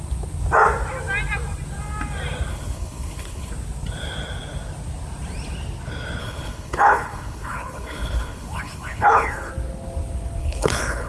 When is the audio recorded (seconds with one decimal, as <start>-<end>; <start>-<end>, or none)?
0.0-2.5; 3.5-6.2; 9.5-10.4